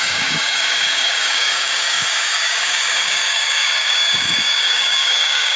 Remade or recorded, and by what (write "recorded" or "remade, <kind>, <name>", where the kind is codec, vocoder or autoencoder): remade, codec, DAC